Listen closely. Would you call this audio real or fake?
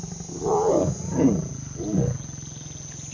real